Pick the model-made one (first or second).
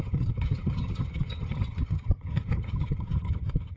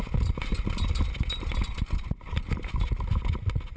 first